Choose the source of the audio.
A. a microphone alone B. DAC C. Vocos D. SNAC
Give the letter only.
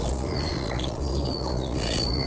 C